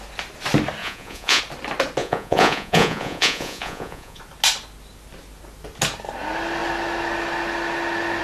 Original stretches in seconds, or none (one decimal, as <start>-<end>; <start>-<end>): 0.0-0.8; 1.4-2.0; 4.2-8.2